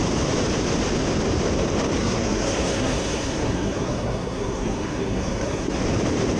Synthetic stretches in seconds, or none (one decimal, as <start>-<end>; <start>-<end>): 2.0-5.8